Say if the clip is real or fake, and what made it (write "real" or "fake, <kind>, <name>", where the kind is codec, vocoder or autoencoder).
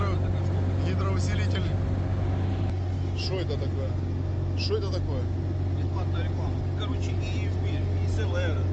real